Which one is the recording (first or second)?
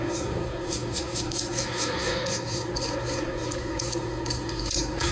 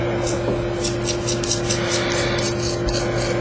second